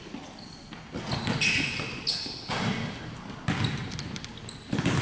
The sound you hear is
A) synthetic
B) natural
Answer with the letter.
B